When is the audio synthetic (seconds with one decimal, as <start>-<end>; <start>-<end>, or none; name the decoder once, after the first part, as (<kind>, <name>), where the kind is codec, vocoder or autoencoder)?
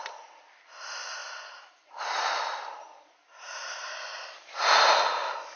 1.2-1.9 (vocoder, BigVGAN v2)